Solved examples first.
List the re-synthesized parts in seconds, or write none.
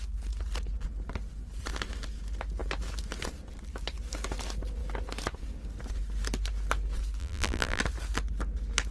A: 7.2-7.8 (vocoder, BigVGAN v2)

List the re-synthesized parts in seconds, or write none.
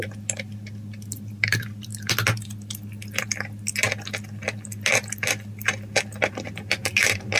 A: 6.8-7.4 (vocoder, BigVGAN v2)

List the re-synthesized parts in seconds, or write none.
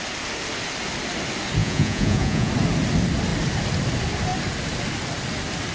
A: 1.6-2.5 (vocoder, Vocos)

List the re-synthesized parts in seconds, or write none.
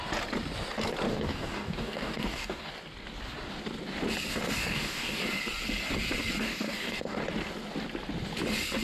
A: 1.1-2.7 (codec, DAC); 4.3-5.2; 6.4-7.2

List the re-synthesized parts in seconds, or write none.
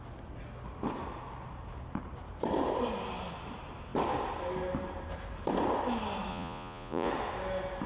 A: 6.3-7.1 (vocoder, Vocos)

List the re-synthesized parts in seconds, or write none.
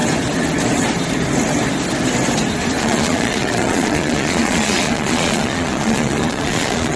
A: 2.8-7.0 (vocoder, Vocos)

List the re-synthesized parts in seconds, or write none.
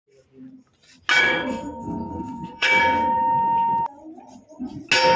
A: 1.2-2.8 (codec, SNAC)